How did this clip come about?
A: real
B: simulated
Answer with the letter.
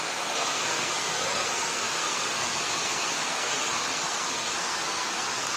B